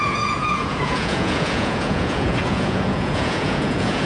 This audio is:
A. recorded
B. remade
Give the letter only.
B